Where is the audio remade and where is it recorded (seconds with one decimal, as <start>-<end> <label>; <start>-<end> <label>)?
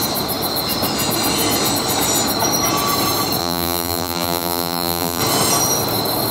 0.0-3.4 recorded; 3.4-5.2 remade; 5.2-6.3 recorded